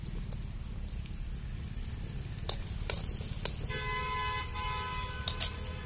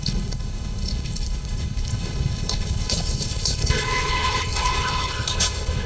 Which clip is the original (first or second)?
first